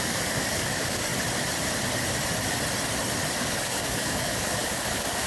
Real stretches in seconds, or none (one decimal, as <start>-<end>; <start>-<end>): 1.1-3.4